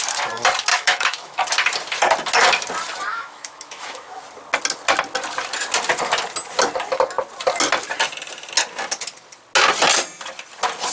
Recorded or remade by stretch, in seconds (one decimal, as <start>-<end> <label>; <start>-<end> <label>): 0.0-0.7 recorded; 0.7-1.4 remade; 1.4-3.1 recorded; 3.1-4.2 remade; 4.2-10.9 recorded